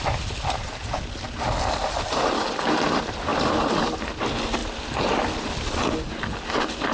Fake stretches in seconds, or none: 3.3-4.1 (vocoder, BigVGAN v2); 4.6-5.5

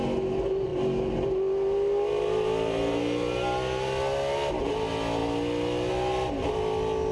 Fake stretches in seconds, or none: none

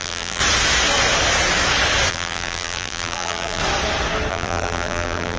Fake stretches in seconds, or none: 0.0-0.4 (vocoder, BigVGAN v2); 2.1-3.6; 4.3-5.4